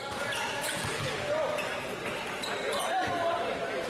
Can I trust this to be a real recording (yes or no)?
no